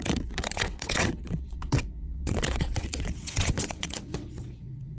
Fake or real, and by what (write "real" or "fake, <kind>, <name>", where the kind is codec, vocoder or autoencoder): fake, vocoder, WaveNeXt